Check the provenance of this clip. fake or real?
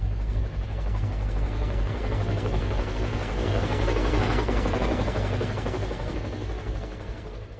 fake